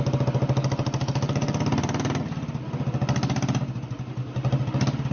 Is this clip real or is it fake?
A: real